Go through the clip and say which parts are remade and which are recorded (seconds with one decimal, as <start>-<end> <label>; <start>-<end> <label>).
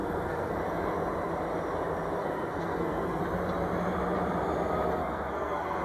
0.0-0.5 remade; 0.5-2.2 recorded; 2.2-3.2 remade; 3.2-5.0 recorded; 5.0-5.8 remade